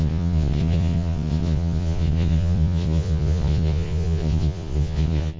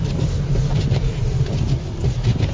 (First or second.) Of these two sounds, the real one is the second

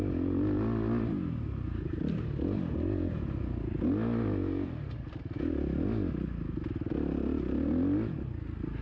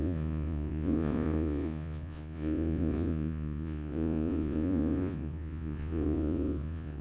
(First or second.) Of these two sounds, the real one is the first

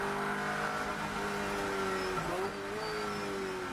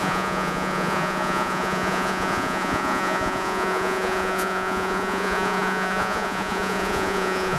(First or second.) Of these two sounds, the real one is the first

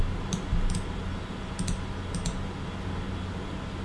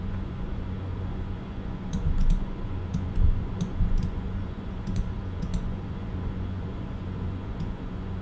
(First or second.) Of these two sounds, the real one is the first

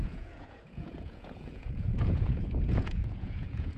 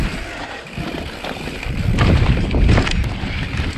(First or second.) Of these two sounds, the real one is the second